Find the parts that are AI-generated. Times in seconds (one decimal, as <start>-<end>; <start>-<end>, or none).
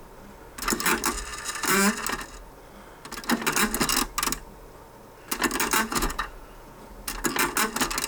5.8-6.9